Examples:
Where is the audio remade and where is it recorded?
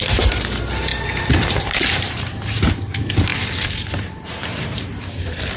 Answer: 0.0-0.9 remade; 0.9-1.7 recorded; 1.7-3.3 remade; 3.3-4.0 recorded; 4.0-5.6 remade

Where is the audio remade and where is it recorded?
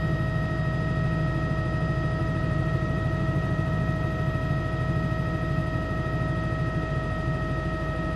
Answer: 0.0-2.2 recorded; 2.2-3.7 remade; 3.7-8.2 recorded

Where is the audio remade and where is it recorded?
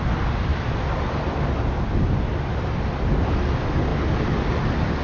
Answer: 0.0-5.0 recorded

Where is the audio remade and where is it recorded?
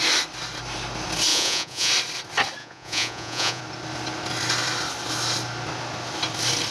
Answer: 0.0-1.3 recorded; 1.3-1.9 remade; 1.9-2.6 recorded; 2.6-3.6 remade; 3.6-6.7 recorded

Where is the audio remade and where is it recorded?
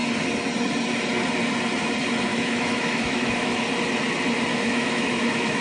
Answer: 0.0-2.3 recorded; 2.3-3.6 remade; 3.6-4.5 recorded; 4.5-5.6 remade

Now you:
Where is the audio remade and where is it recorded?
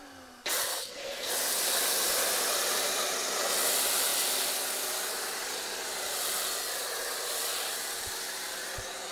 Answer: 0.0-0.7 recorded; 0.7-1.3 remade; 1.3-9.1 recorded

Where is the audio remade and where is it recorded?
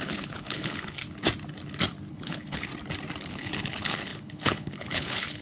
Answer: 0.0-1.0 remade; 1.0-2.1 recorded; 2.1-2.7 remade; 2.7-3.3 recorded; 3.3-5.4 remade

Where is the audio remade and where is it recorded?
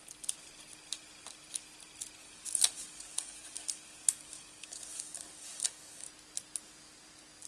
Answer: 0.0-2.2 recorded; 2.2-6.1 remade; 6.1-7.5 recorded